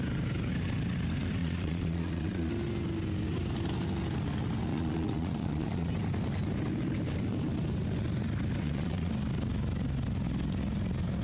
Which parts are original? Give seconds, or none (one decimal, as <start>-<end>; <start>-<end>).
0.0-1.4; 2.5-4.7; 5.9-8.6; 9.1-11.2